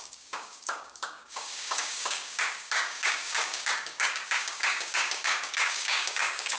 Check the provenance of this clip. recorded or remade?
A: remade